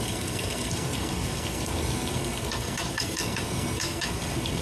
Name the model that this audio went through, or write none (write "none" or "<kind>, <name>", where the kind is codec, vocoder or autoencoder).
codec, SNAC